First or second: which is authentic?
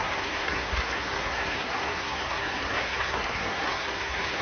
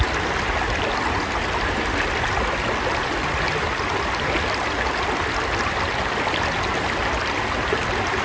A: second